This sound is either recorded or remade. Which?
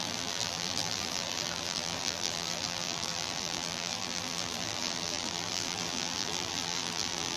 remade